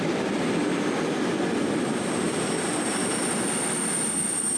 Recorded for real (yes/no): no